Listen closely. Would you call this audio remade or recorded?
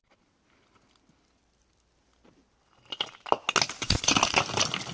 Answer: recorded